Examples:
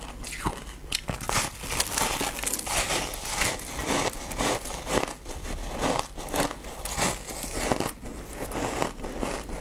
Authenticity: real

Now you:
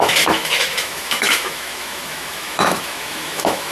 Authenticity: fake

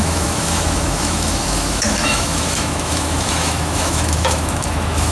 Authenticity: fake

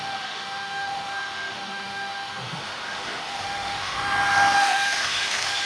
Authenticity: fake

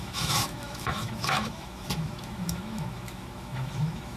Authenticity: fake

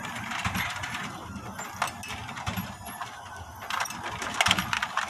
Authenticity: real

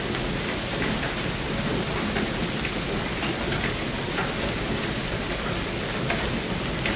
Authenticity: real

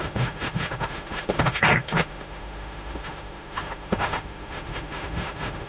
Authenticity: fake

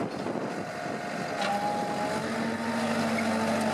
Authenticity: real